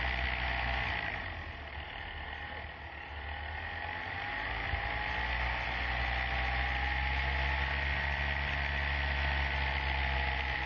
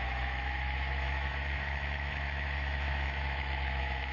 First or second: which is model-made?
second